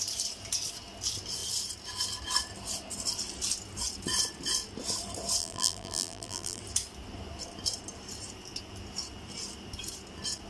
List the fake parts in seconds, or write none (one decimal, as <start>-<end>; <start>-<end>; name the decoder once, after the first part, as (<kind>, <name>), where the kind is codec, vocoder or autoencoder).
5.4-6.6 (vocoder, BigVGAN v2)